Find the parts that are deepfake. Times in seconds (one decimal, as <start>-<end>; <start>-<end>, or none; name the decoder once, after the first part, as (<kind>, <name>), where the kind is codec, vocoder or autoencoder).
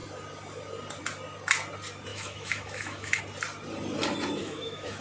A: 2.1-3.2 (autoencoder, DAC-VAE); 4.4-5.0